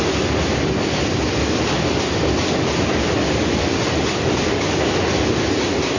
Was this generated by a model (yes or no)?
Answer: no